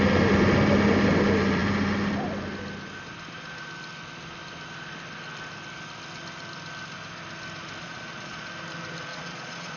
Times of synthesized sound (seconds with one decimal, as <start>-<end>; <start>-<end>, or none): 7.8-8.5; 9.1-9.8